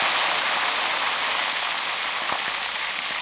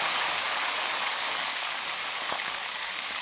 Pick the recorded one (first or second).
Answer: first